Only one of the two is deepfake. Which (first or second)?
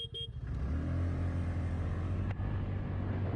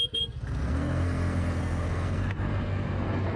second